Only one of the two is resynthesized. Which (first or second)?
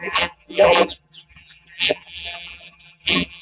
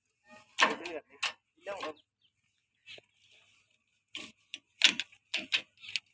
first